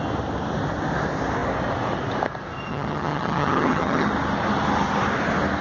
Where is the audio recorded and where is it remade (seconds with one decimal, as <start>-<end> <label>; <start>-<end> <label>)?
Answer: 0.0-2.7 recorded; 2.7-4.1 remade; 4.1-5.6 recorded